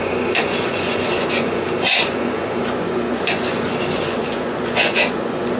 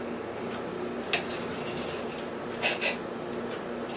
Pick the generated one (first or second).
first